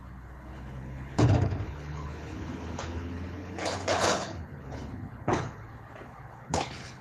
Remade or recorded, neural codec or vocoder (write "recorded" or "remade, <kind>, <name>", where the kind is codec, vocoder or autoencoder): remade, codec, HILCodec